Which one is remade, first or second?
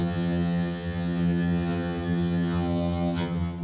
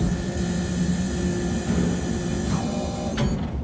first